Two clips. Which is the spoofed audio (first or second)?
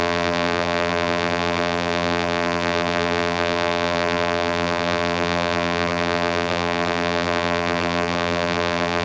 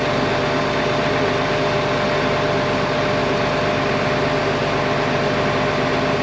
first